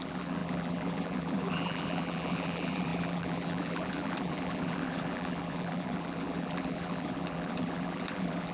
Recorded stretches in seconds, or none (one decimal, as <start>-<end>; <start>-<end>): none